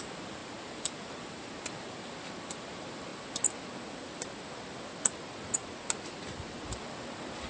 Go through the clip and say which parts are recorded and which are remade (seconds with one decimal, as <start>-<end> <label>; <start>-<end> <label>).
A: 0.0-3.1 remade; 3.1-6.6 recorded; 6.6-7.5 remade